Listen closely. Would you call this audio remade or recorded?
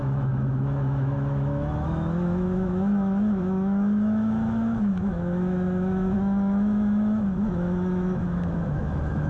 remade